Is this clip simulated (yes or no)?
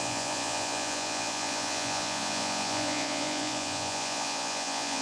yes